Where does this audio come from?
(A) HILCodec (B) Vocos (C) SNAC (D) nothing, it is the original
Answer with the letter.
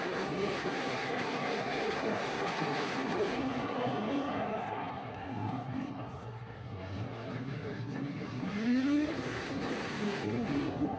C